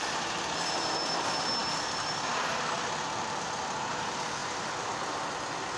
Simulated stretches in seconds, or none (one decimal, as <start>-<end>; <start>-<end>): none